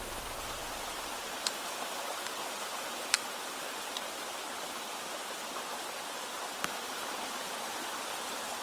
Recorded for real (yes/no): yes